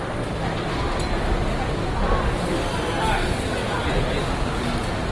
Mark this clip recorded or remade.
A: recorded